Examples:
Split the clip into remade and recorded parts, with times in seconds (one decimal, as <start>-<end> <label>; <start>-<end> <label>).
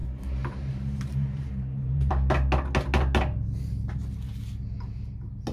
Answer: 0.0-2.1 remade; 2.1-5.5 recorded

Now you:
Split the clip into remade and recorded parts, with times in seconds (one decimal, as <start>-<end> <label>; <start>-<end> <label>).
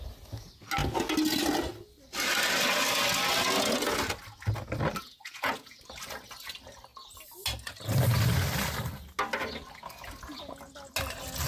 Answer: 0.0-5.0 recorded; 5.0-5.8 remade; 5.8-11.5 recorded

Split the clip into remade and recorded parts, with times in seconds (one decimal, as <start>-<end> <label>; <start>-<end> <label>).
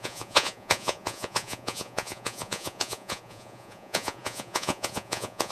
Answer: 0.0-5.5 remade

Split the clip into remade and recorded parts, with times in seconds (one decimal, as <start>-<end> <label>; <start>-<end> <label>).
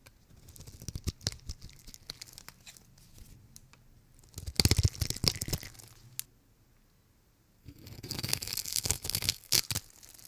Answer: 0.0-7.6 recorded; 7.6-9.6 remade; 9.6-10.3 recorded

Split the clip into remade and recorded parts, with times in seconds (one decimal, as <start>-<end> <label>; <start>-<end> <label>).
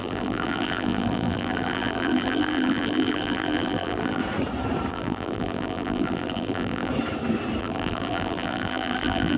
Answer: 0.0-4.2 remade; 4.2-4.9 recorded; 4.9-6.9 remade; 6.9-7.6 recorded; 7.6-9.4 remade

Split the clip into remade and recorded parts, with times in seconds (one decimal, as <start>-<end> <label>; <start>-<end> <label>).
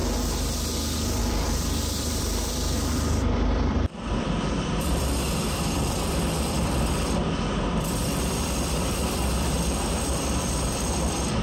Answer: 0.0-1.2 recorded; 1.2-11.4 remade